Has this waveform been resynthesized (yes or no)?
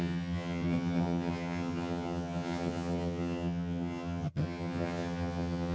yes